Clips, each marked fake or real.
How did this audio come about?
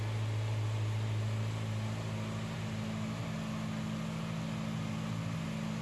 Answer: real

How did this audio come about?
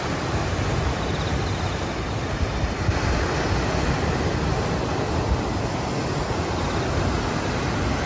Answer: real